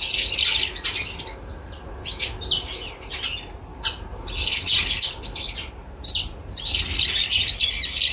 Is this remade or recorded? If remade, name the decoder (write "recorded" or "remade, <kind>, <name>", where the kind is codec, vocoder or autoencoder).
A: recorded